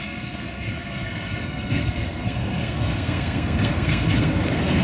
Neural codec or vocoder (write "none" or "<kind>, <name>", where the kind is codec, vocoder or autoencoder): codec, SNAC